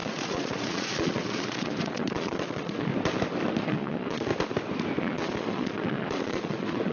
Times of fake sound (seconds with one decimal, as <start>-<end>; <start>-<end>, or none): 0.0-2.9; 3.6-4.3; 5.0-6.9